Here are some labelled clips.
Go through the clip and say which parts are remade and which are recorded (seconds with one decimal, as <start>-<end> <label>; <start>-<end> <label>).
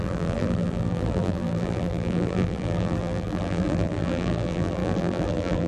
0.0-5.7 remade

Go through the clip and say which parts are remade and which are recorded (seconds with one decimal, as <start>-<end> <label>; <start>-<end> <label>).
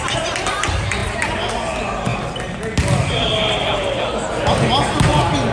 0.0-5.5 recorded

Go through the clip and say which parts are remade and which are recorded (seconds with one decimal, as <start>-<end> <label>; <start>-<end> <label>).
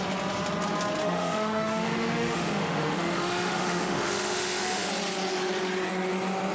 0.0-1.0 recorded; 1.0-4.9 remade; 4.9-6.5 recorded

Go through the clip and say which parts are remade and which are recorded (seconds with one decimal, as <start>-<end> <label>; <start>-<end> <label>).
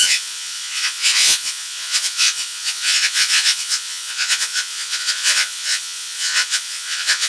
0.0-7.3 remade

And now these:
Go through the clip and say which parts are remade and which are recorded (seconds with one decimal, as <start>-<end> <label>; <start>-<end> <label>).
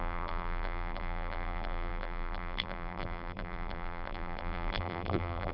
0.0-5.5 remade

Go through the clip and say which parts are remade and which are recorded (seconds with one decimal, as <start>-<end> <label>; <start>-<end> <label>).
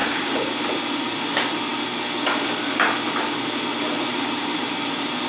0.0-0.8 remade; 0.8-5.3 recorded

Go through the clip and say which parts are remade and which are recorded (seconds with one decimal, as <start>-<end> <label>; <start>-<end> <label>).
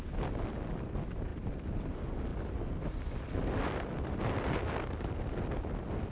0.0-6.1 recorded